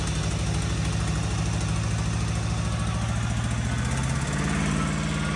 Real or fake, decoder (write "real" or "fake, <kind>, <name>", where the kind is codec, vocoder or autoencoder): real